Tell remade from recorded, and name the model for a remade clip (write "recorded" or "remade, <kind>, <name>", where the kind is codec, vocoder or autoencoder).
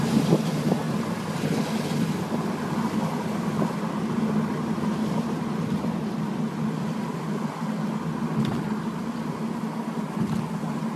recorded